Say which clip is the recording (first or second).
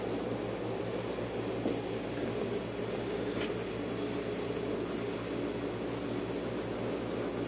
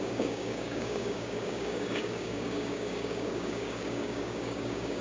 first